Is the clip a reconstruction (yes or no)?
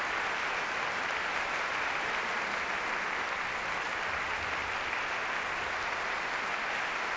no